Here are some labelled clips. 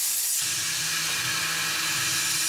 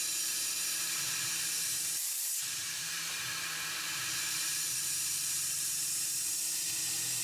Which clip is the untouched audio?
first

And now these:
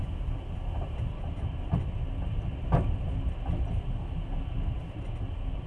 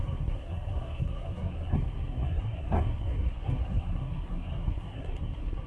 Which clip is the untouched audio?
first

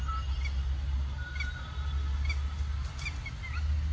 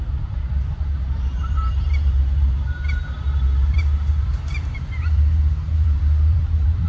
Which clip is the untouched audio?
first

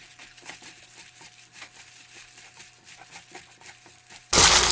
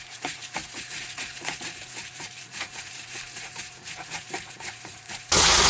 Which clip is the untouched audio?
first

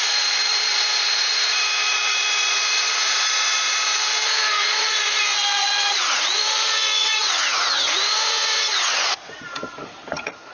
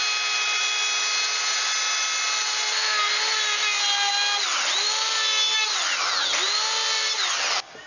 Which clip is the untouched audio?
second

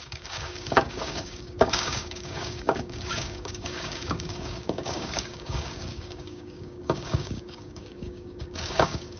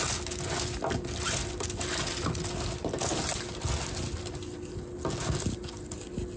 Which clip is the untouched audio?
second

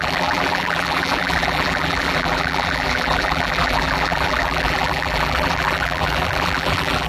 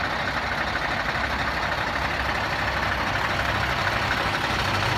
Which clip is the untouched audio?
second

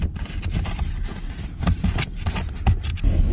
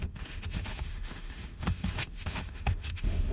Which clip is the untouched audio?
first